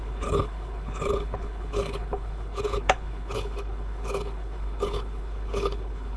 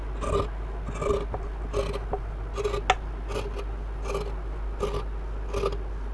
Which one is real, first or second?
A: second